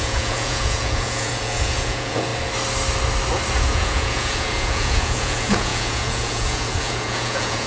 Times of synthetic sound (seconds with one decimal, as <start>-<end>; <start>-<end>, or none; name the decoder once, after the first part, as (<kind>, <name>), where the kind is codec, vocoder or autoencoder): 0.0-2.3 (vocoder, Vocos); 3.6-7.7